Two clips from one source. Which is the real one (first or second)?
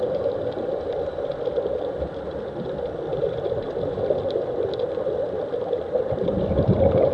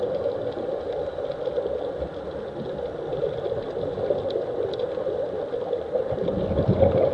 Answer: second